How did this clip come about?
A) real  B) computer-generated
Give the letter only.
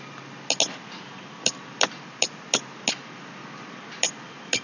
A